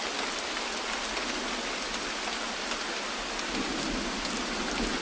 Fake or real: real